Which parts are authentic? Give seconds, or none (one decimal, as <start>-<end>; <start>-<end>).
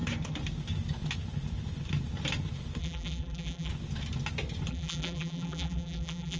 0.0-2.8; 3.7-4.7